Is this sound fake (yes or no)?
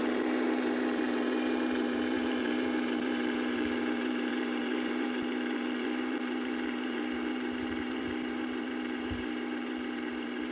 yes